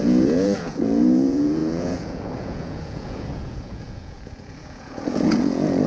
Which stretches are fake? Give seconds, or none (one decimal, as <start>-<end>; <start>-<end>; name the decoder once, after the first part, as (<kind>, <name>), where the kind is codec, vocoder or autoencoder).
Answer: 0.0-5.9 (vocoder, Vocos)